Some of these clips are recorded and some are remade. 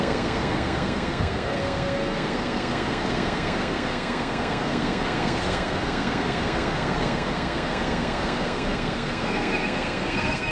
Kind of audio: remade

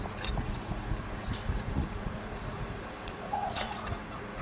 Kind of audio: remade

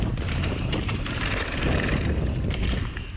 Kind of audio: remade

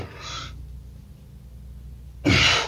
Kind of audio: recorded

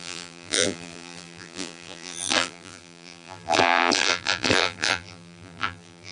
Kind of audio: remade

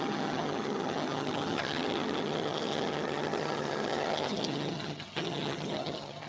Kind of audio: remade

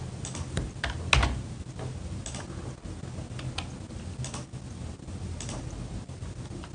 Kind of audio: recorded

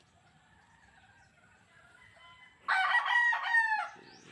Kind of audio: recorded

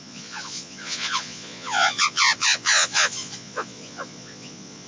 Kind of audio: remade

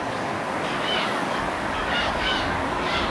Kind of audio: remade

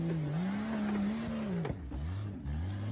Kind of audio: recorded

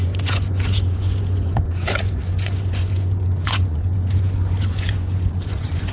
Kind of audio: remade